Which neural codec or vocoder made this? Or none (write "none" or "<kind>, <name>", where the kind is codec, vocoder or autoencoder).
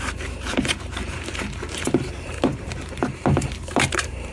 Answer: vocoder, BigVGAN v2